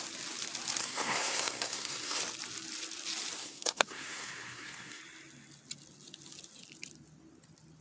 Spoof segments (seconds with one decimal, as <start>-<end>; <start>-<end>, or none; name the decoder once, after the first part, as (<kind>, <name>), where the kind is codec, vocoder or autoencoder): 0.8-2.2 (codec, SNAC); 3.4-5.0